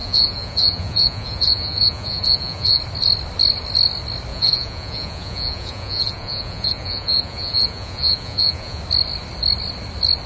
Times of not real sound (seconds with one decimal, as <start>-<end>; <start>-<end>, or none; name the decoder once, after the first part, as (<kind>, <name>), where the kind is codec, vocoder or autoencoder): 0.0-2.8 (vocoder, Vocos); 4.3-8.8